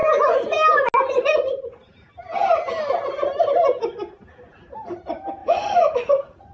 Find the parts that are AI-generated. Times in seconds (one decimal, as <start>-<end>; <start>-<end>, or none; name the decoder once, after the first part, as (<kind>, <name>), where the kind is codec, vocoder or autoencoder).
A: 5.4-6.5 (vocoder, Vocos)